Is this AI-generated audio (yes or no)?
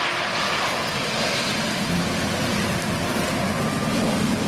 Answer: no